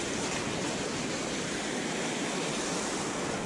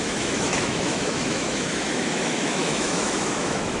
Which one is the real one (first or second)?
first